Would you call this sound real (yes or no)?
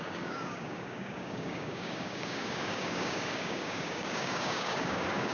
no